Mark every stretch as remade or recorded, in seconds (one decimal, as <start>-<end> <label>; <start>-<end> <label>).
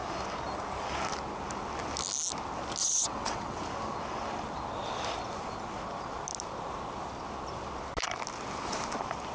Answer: 0.0-2.8 recorded; 2.8-3.6 remade; 3.6-9.3 recorded